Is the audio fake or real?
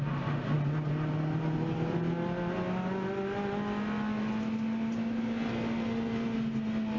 real